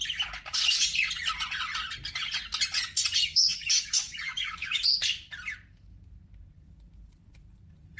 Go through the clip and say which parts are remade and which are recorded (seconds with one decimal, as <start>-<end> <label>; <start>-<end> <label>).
0.0-3.5 recorded; 3.5-4.8 remade; 4.8-8.0 recorded

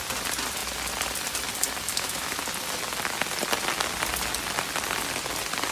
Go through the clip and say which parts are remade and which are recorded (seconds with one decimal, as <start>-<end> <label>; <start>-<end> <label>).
0.0-1.9 recorded; 1.9-2.4 remade; 2.4-5.7 recorded

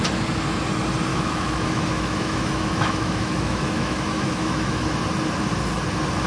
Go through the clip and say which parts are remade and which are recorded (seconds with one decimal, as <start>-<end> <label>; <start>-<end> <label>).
0.0-1.1 recorded; 1.1-4.9 remade; 4.9-6.3 recorded

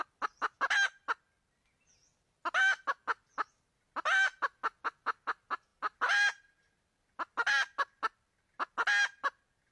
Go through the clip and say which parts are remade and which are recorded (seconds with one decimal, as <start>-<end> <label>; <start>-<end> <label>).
0.0-9.7 recorded

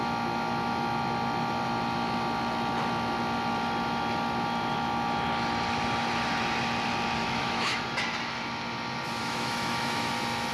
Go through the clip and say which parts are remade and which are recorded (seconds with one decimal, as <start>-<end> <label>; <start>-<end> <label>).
0.0-7.2 recorded; 7.2-7.8 remade; 7.8-9.2 recorded; 9.2-10.1 remade; 10.1-10.5 recorded

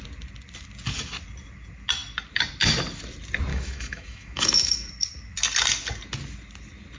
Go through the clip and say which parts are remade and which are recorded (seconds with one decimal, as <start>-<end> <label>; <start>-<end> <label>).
0.0-3.5 recorded; 3.5-4.9 remade; 4.9-7.0 recorded

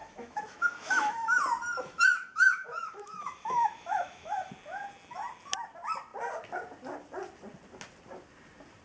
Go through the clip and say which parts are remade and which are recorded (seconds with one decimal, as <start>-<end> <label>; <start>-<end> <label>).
0.0-1.4 remade; 1.4-1.8 recorded; 1.8-4.5 remade; 4.5-8.8 recorded